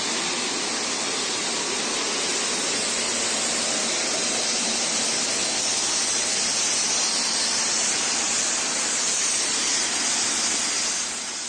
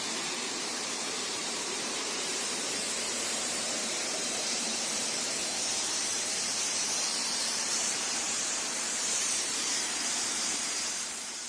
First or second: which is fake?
second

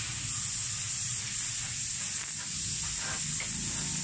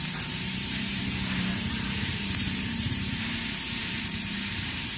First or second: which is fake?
second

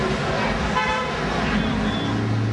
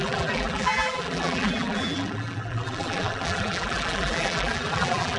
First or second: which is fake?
second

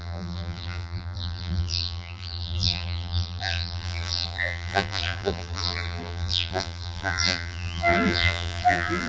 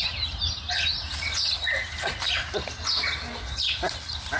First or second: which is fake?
first